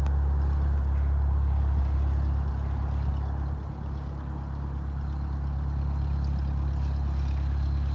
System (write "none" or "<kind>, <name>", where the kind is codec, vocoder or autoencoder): none